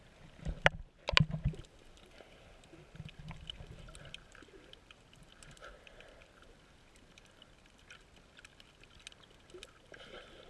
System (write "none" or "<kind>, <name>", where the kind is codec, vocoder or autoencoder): none